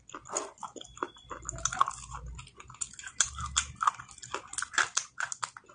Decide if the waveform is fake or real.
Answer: real